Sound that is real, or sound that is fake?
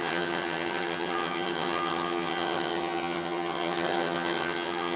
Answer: fake